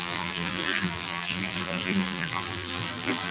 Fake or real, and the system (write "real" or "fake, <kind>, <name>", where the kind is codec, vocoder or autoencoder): fake, vocoder, BigVGAN v2